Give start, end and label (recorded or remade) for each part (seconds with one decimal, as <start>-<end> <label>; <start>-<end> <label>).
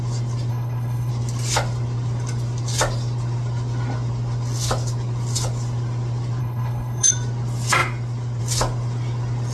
0.0-0.5 recorded; 0.5-1.1 remade; 1.1-6.4 recorded; 6.4-7.1 remade; 7.1-9.5 recorded